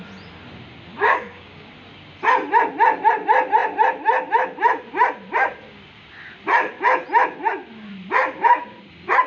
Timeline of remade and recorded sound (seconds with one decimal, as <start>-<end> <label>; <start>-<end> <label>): 0.0-0.9 recorded; 0.9-1.7 remade; 1.7-9.3 recorded

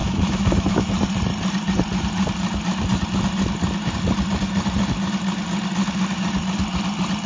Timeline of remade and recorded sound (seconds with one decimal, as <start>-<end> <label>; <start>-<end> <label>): 0.0-0.9 remade; 0.9-7.3 recorded

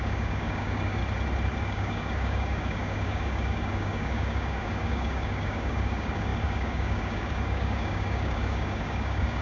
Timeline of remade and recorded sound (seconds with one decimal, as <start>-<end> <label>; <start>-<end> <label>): 0.0-1.0 remade; 1.0-1.6 recorded; 1.6-9.4 remade

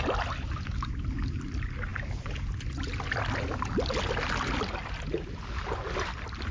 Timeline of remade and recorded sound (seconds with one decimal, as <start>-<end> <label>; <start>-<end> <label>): 0.0-6.5 recorded

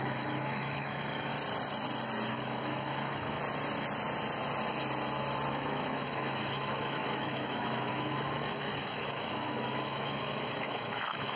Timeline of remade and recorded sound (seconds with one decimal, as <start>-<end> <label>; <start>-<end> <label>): 0.0-1.3 remade; 1.3-2.3 recorded; 2.3-3.4 remade; 3.4-5.5 recorded; 5.5-11.4 remade

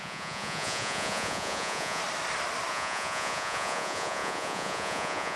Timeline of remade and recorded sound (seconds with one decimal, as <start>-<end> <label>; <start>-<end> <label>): 0.0-2.0 remade; 2.0-2.7 recorded; 2.7-5.4 remade

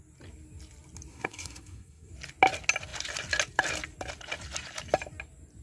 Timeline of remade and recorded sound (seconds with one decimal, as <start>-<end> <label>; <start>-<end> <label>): 0.0-1.1 recorded; 1.1-2.1 remade; 2.1-5.6 recorded

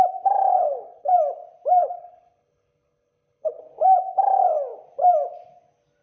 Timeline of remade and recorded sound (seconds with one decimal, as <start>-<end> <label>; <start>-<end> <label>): 0.0-0.5 recorded; 0.5-1.1 remade; 1.1-1.8 recorded; 1.8-3.6 remade; 3.6-6.0 recorded